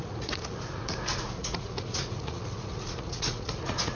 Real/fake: fake